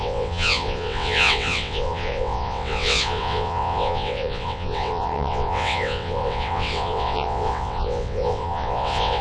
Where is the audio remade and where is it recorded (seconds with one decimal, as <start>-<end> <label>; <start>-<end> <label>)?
0.0-9.2 remade